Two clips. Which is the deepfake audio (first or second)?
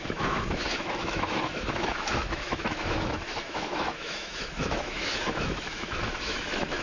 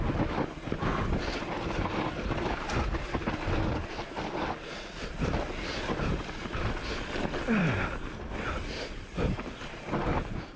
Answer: first